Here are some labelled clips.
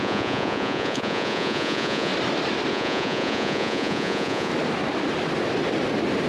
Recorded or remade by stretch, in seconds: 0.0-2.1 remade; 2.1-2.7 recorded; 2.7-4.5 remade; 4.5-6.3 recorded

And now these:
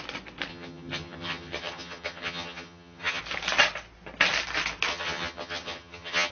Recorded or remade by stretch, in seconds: 0.0-0.5 recorded; 0.5-3.2 remade; 3.2-4.9 recorded; 4.9-6.3 remade

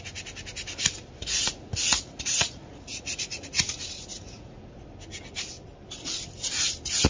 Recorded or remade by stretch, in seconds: 0.0-1.9 recorded; 1.9-3.5 remade; 3.5-4.1 recorded; 4.1-4.8 remade; 4.8-7.1 recorded